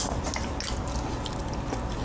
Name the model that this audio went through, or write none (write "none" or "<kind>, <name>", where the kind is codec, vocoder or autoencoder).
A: none